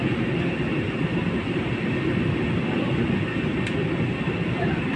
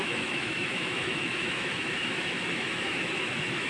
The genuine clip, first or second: first